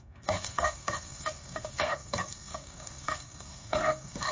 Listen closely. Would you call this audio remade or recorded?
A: remade